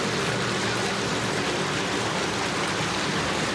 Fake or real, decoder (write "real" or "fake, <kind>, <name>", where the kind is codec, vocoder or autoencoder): real